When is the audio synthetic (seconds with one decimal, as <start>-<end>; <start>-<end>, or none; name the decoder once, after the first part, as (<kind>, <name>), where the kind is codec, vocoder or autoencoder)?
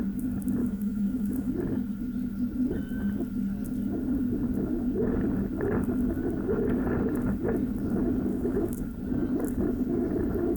0.6-1.5 (autoencoder, DAC-VAE); 8.3-8.8